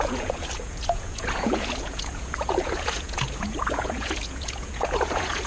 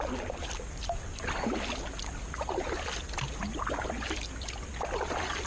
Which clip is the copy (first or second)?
first